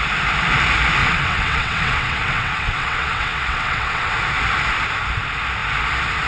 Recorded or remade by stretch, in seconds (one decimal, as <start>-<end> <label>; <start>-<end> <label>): 0.0-1.0 recorded; 1.0-4.1 remade; 4.1-6.3 recorded